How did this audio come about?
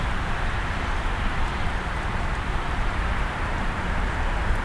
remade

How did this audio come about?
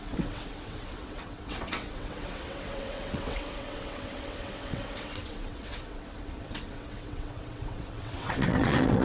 remade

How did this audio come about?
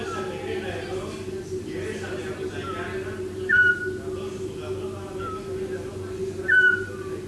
recorded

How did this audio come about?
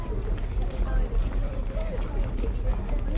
recorded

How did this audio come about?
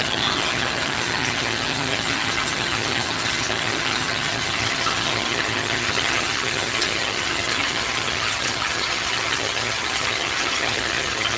remade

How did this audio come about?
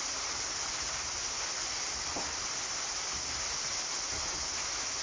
recorded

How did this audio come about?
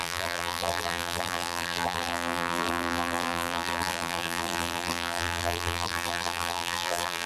remade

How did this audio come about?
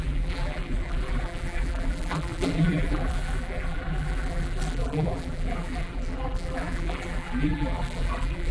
remade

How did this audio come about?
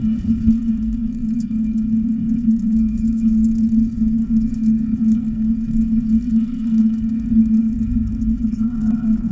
remade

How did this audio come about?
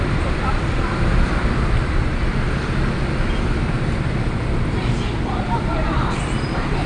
remade